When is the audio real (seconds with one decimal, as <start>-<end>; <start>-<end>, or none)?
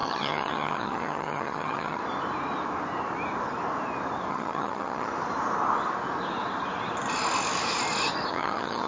2.0-4.3; 5.1-8.3